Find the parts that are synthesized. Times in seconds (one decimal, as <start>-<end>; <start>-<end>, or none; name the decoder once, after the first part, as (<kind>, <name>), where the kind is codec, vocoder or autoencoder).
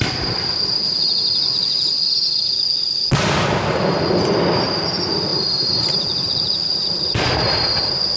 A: 5.3-6.3 (vocoder, BigVGAN v2); 6.7-8.2